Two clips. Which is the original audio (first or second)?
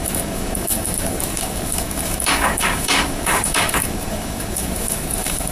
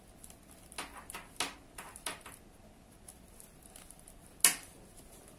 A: second